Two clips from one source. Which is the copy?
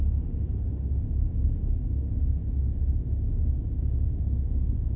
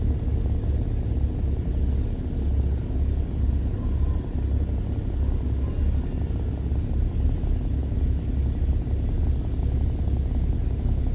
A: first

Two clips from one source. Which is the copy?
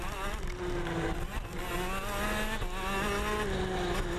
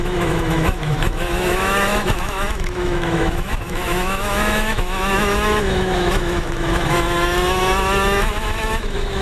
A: second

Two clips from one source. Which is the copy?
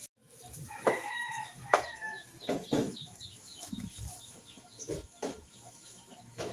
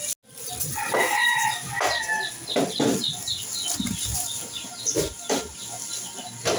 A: first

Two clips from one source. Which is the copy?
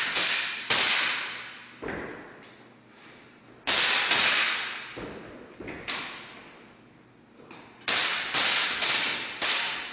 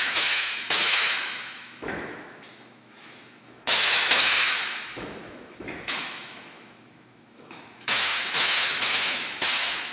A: second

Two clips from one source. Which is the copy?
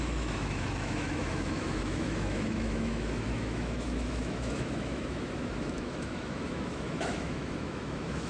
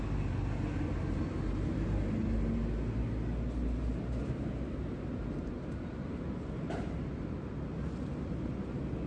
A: first